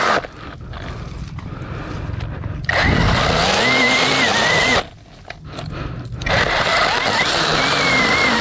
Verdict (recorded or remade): recorded